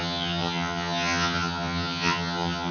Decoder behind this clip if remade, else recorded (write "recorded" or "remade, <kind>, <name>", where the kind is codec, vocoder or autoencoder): remade, vocoder, HiFi-GAN